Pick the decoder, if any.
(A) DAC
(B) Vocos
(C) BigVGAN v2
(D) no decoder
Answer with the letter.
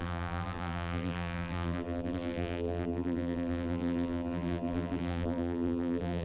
C